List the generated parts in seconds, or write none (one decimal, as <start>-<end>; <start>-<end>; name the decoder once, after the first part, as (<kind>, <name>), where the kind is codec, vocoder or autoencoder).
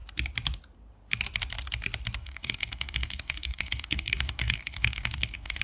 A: 2.2-5.6 (codec, DAC)